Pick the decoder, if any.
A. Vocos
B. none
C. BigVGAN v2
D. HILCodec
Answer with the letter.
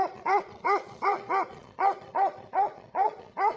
A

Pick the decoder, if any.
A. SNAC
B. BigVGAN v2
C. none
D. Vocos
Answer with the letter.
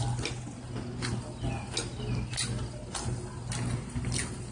C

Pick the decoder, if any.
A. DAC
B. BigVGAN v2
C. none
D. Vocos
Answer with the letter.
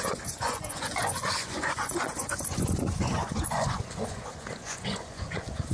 D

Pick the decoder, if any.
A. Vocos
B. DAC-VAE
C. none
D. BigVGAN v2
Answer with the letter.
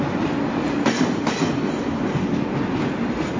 C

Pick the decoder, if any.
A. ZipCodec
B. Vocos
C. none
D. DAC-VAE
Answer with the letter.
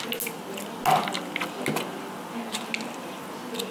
C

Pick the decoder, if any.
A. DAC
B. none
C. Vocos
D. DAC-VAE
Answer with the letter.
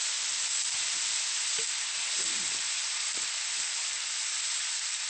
B